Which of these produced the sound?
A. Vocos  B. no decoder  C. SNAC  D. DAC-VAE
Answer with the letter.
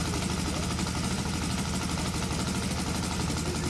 B